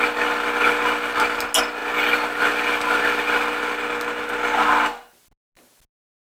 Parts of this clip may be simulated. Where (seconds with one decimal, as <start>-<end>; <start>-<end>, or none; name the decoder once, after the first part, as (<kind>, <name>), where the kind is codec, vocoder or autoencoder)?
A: none